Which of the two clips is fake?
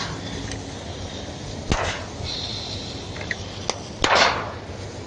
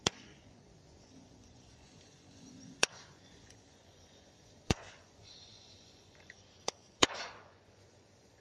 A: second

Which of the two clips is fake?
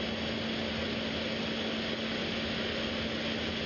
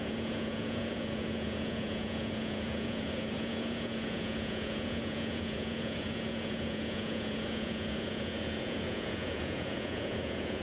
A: second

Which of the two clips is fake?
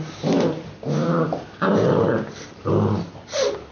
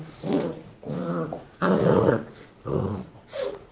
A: second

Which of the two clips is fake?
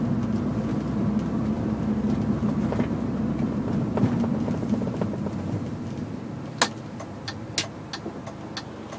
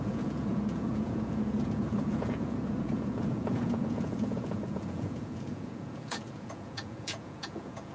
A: second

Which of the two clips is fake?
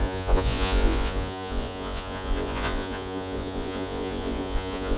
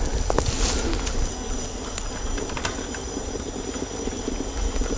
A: first